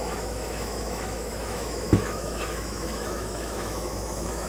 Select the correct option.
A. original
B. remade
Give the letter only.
B